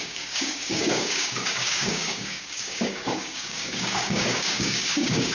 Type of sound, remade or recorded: remade